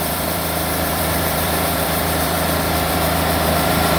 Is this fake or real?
fake